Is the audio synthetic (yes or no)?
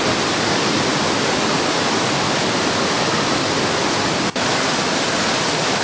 no